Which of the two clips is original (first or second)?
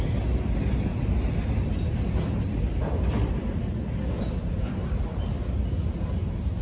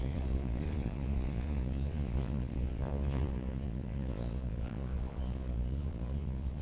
first